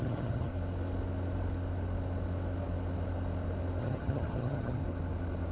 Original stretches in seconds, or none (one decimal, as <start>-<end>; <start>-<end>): 0.5-3.8; 4.8-5.5